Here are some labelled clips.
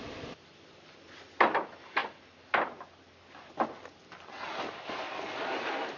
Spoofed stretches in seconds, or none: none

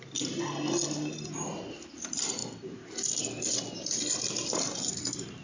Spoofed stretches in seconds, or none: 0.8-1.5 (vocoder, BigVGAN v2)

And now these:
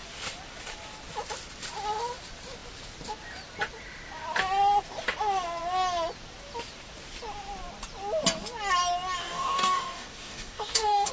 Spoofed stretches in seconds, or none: 9.2-11.1 (codec, DAC)

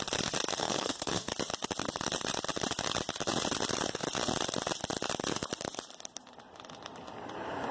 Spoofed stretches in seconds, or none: 0.6-1.3 (codec, SNAC)

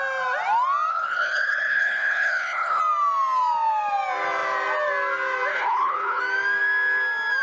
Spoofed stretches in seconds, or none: 0.9-2.8 (codec, HILCodec); 5.5-6.2

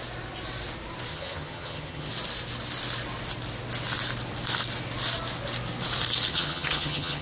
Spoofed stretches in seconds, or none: 1.1-2.1 (vocoder, HiFi-GAN); 6.3-7.2

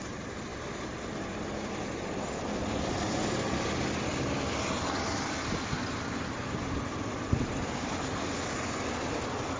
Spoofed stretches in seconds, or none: none

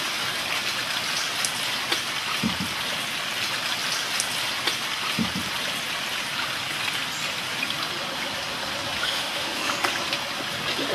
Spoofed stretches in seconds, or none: 9.0-9.7 (autoencoder, DAC-VAE)